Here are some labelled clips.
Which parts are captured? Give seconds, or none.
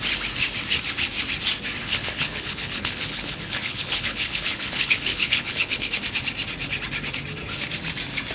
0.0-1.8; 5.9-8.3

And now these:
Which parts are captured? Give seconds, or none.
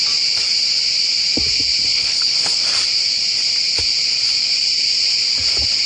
0.0-1.9; 2.6-5.9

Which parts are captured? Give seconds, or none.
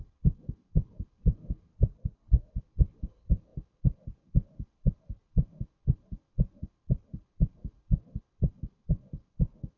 0.0-1.7; 2.6-9.8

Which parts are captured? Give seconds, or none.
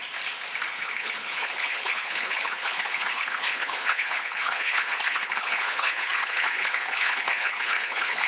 0.0-0.7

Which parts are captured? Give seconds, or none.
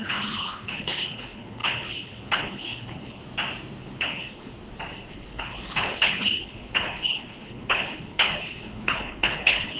3.2-3.8; 4.5-5.1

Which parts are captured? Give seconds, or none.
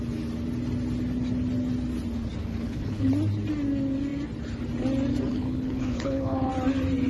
0.0-2.4; 3.1-5.3; 6.5-7.1